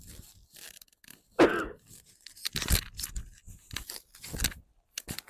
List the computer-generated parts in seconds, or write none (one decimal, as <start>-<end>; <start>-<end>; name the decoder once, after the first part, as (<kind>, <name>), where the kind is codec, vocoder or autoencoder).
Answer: none